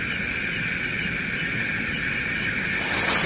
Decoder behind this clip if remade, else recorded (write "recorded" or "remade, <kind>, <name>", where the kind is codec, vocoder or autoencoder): recorded